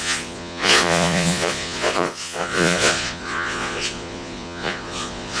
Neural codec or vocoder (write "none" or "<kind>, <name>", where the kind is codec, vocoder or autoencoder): vocoder, Vocos